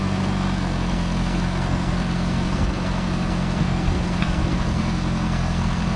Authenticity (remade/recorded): remade